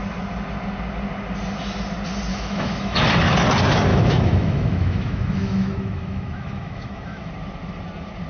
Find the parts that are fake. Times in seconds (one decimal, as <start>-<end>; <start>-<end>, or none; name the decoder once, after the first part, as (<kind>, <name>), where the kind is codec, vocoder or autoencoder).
2.3-3.0 (autoencoder, DAC-VAE); 3.9-7.3